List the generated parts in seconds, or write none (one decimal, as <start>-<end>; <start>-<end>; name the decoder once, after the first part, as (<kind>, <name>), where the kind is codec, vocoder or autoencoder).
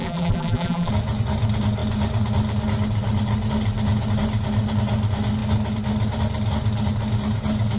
0.0-0.9 (vocoder, BigVGAN v2)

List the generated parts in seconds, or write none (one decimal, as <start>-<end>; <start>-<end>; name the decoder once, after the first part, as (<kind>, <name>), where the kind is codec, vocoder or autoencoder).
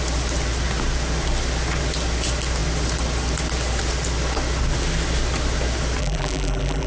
6.0-6.9 (vocoder, BigVGAN v2)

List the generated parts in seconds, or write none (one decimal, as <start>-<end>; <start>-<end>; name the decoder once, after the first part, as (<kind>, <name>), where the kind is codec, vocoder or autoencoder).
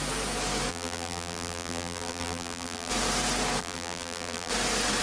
0.7-2.9 (vocoder, BigVGAN v2); 3.6-4.5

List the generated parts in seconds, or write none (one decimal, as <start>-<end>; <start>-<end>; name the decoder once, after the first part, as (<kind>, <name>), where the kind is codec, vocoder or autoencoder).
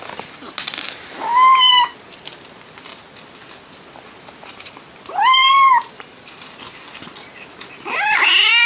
5.4-6.6 (vocoder, BigVGAN v2)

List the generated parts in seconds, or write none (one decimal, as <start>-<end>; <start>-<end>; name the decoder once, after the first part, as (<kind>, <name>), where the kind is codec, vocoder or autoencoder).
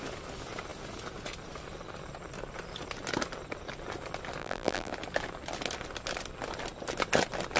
4.4-4.9 (vocoder, BigVGAN v2)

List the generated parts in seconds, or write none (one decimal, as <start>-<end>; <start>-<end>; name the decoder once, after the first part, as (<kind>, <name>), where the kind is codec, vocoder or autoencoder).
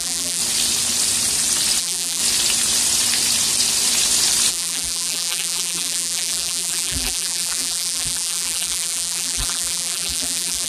0.0-0.4 (vocoder, BigVGAN v2); 1.8-2.2; 4.5-10.7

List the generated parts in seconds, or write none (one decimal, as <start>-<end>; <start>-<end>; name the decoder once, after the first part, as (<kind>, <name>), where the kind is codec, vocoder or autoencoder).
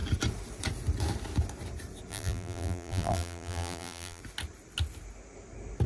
2.1-4.2 (vocoder, BigVGAN v2)